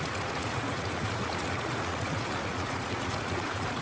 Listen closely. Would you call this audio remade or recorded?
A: remade